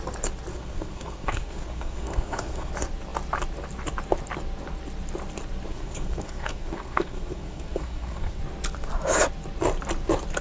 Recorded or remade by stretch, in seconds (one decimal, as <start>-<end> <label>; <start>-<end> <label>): 0.0-0.5 recorded; 0.5-2.7 remade; 2.7-5.7 recorded; 5.7-8.4 remade; 8.4-10.4 recorded